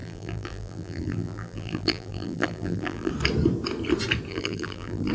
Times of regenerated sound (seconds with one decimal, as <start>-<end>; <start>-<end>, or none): 0.0-3.1; 4.3-5.1